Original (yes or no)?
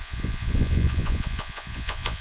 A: no